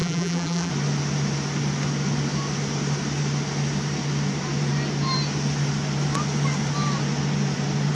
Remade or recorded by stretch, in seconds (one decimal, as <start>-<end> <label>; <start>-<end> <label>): 0.0-0.7 remade; 0.7-7.9 recorded